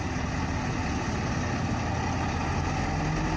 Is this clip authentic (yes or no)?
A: yes